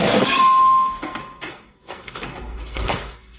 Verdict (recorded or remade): remade